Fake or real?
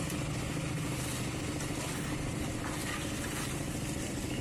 real